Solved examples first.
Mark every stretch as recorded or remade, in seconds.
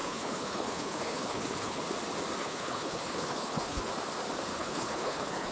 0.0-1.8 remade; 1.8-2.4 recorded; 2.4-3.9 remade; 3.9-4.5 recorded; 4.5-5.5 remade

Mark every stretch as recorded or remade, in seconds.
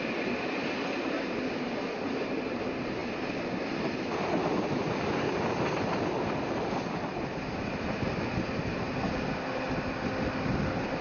0.0-11.0 recorded